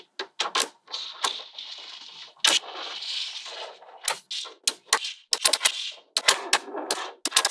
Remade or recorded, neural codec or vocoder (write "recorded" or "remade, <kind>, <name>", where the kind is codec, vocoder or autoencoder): recorded